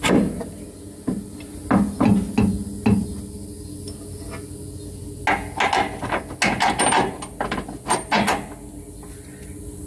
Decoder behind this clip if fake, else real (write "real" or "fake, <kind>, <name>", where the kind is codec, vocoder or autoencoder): real